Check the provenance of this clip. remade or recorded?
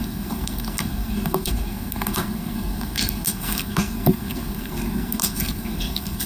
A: remade